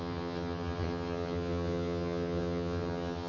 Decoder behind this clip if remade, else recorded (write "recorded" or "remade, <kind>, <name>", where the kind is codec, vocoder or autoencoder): remade, vocoder, HiFi-GAN